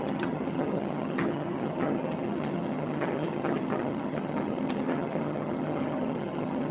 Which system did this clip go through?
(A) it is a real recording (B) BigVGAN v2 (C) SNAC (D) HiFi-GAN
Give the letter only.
D